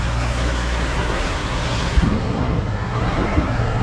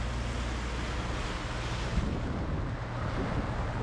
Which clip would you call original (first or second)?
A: second